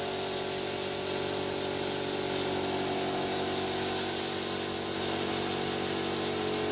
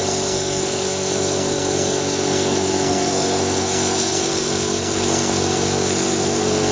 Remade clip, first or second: second